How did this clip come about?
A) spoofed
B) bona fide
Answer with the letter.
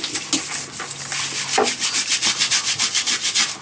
B